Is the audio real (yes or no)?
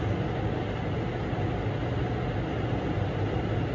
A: yes